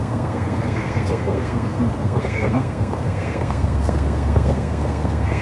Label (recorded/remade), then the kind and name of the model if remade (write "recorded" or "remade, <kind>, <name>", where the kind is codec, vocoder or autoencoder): remade, codec, SNAC